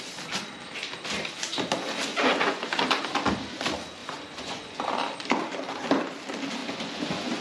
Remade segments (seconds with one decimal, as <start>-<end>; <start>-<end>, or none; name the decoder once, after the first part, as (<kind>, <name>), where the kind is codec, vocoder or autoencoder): 2.1-2.8 (vocoder, Vocos); 4.0-4.9; 6.6-7.4